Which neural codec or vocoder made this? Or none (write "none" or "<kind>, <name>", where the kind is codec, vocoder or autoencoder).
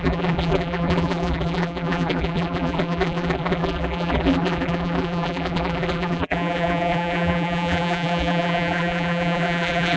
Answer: vocoder, BigVGAN v2